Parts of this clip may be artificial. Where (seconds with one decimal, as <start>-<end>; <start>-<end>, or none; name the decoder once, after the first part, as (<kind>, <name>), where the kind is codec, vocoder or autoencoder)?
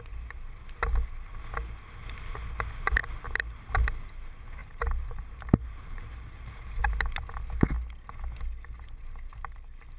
4.6-6.8 (vocoder, BigVGAN v2)